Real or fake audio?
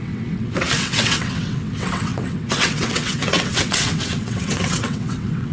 fake